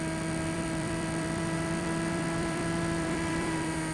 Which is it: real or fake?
fake